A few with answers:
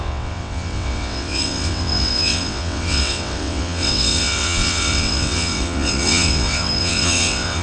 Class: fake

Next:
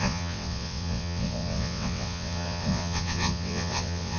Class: fake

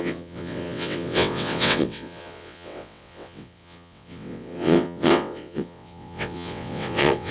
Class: fake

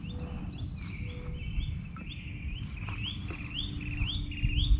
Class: real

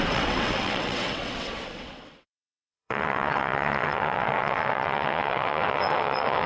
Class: fake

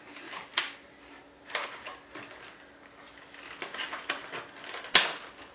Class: real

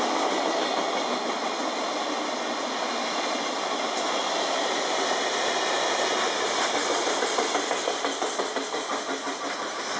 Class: real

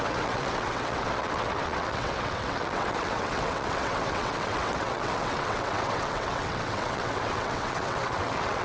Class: fake